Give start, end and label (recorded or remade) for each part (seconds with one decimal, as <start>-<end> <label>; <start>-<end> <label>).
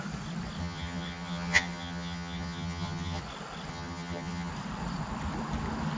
0.0-0.6 recorded; 0.6-3.2 remade; 3.2-3.7 recorded; 3.7-4.5 remade; 4.5-6.0 recorded